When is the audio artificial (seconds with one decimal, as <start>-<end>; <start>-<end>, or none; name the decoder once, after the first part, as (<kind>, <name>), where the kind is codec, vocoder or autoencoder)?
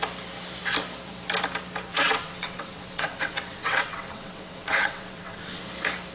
1.9-5.6 (vocoder, WaveNeXt)